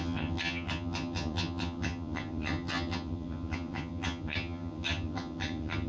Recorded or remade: remade